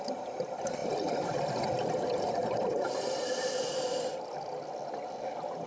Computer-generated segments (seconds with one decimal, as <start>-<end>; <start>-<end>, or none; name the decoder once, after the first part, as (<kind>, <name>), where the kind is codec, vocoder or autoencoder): 0.8-4.2 (vocoder, BigVGAN v2)